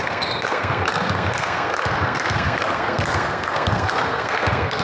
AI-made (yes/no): yes